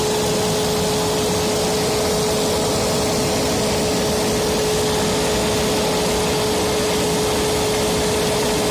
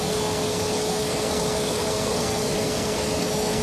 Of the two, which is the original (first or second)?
first